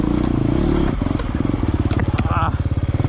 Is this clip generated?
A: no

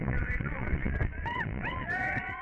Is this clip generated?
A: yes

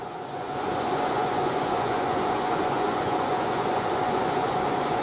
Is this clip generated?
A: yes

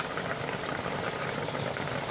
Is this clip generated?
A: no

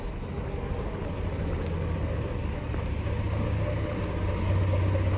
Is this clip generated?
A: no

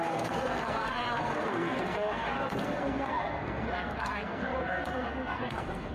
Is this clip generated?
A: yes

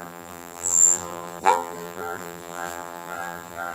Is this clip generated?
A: yes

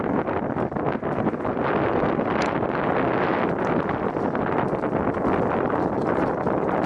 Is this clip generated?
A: no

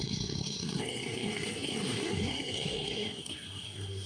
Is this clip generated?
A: yes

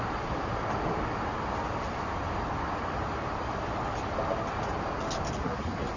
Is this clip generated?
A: no